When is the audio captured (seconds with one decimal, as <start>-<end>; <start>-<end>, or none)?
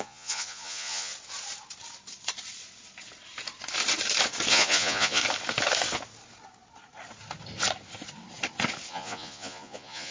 1.1-4.5; 5.2-8.9